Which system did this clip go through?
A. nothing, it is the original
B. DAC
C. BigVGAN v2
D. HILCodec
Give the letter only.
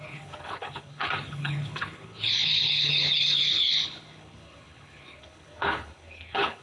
D